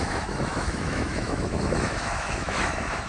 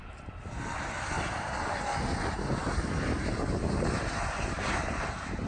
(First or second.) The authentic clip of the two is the second